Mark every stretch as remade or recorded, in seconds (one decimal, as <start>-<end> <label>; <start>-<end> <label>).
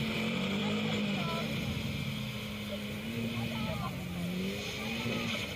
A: 0.0-5.6 recorded